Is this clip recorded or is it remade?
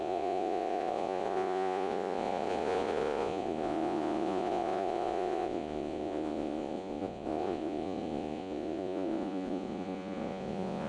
remade